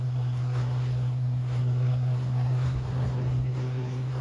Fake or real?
fake